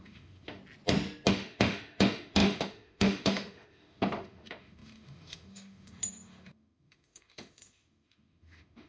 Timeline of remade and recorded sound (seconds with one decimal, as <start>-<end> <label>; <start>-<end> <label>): 0.0-0.6 remade; 0.6-1.3 recorded; 1.3-8.9 remade